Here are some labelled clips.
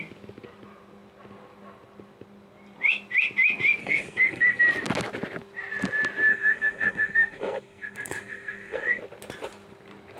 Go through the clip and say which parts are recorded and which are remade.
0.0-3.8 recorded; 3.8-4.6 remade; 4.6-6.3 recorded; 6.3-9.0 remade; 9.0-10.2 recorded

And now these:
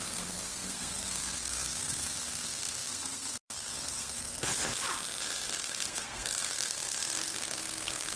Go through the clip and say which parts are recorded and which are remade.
0.0-4.5 remade; 4.5-5.5 recorded; 5.5-8.2 remade

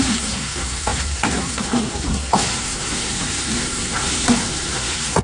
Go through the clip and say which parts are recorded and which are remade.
0.0-5.2 remade

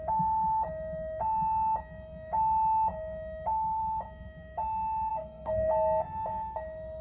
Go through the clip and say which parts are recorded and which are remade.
0.0-5.1 recorded; 5.1-5.7 remade; 5.7-7.0 recorded

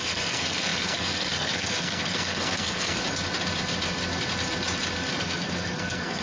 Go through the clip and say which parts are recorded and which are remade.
0.0-3.0 remade; 3.0-5.2 recorded; 5.2-6.2 remade